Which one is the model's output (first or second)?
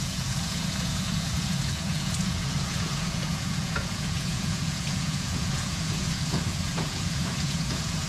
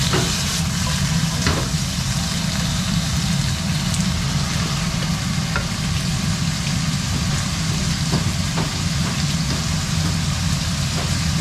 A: first